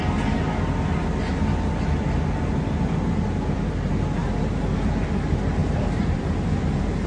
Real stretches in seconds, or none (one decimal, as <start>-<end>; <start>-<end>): 0.0-5.6; 6.2-7.1